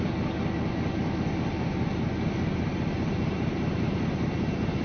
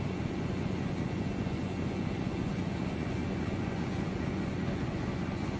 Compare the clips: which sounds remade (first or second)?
second